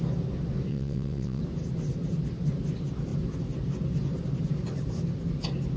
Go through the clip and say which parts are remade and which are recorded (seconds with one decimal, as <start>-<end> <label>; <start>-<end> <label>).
0.0-0.7 recorded; 0.7-1.4 remade; 1.4-5.8 recorded